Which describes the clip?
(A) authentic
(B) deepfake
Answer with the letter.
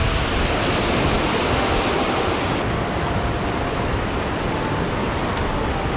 A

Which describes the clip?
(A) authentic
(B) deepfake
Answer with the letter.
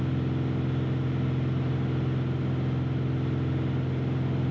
A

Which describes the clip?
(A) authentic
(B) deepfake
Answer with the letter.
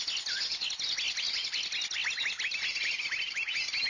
A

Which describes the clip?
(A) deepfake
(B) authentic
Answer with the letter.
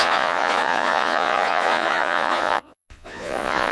A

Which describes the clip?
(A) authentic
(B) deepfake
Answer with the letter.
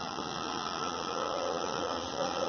B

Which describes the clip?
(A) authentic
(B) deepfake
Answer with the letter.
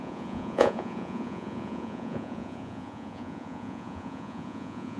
B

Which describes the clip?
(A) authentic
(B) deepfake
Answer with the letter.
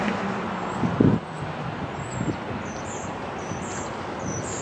A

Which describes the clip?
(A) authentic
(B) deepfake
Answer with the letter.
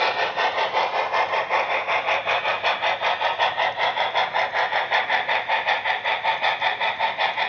A